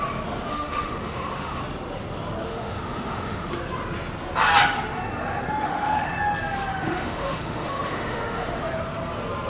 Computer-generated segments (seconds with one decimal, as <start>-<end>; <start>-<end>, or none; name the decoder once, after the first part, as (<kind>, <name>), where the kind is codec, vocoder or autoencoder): 0.5-1.6 (autoencoder, DAC-VAE); 2.5-3.5; 5.6-6.1; 6.7-8.6